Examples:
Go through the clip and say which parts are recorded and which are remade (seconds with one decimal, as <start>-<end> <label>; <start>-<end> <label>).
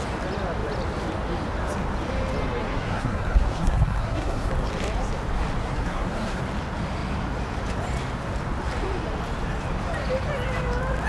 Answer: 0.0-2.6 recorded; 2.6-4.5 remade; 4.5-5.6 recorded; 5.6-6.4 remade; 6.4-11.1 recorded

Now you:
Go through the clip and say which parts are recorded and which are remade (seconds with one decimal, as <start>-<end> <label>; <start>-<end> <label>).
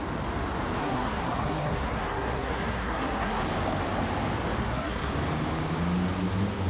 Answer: 0.0-0.8 recorded; 0.8-3.4 remade; 3.4-4.6 recorded; 4.6-5.1 remade; 5.1-6.7 recorded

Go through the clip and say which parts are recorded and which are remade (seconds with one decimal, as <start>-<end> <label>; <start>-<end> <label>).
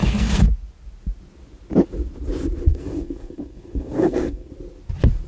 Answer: 0.0-0.5 remade; 0.5-2.7 recorded; 2.7-4.5 remade; 4.5-5.3 recorded